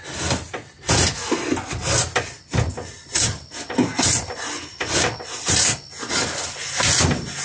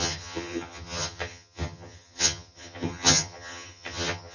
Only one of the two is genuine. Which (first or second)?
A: first